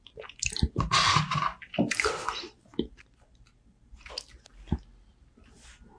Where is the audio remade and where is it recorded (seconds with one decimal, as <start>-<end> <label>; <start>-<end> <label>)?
0.0-6.0 recorded